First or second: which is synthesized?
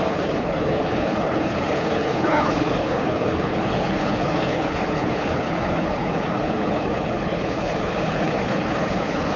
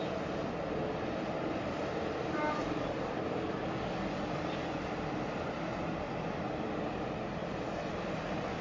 first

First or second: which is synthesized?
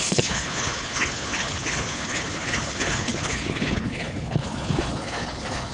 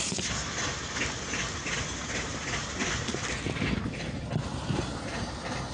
first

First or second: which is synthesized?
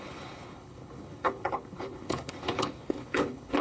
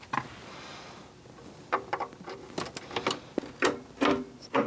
first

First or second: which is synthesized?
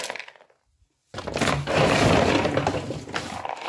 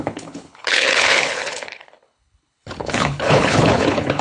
second